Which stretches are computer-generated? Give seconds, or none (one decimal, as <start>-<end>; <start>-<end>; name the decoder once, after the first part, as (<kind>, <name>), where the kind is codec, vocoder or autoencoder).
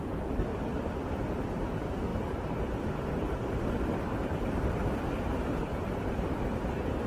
0.5-1.2 (vocoder, BigVGAN v2); 2.1-5.1